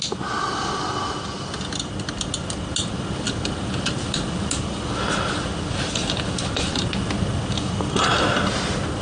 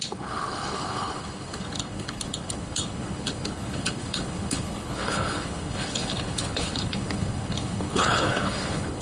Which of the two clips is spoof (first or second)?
second